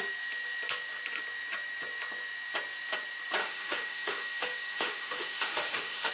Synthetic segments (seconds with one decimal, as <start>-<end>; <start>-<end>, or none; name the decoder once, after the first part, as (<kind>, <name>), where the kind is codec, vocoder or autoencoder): 3.4-6.1 (autoencoder, DAC-VAE)